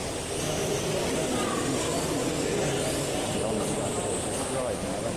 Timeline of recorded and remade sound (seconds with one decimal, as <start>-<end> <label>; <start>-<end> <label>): 0.0-5.2 recorded